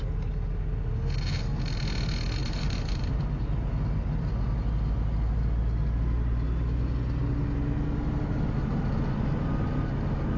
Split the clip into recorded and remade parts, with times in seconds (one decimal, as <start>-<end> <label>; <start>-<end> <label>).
0.0-2.4 recorded; 2.4-3.3 remade; 3.3-10.4 recorded